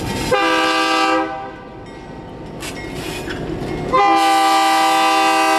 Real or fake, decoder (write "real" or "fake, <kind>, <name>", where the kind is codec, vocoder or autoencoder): real